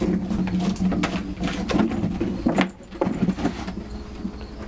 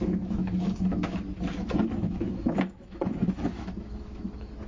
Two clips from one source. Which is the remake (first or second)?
second